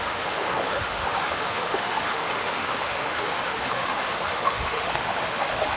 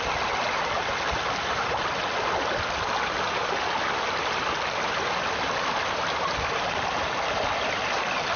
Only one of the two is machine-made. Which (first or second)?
first